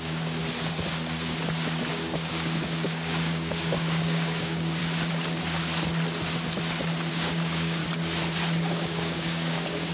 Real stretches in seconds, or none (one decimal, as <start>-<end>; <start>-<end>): 0.4-1.9; 4.8-7.1; 7.8-8.7